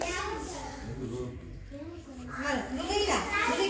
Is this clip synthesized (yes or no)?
no